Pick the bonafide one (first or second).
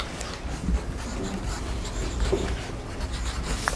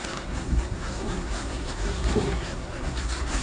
first